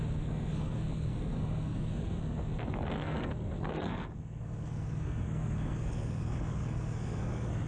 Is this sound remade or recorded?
remade